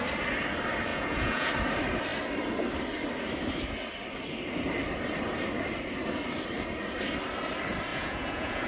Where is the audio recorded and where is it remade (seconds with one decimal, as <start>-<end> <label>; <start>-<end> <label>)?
0.0-0.9 recorded; 0.9-1.5 remade; 1.5-7.9 recorded; 7.9-8.7 remade